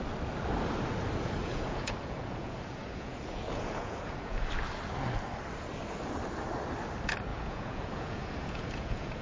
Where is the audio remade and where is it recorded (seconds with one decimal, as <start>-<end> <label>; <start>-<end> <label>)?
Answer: 0.0-1.4 recorded; 1.4-4.5 remade; 4.5-7.3 recorded; 7.3-9.2 remade